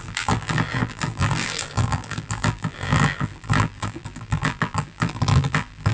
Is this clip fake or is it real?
fake